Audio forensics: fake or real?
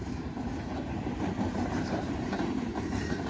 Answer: fake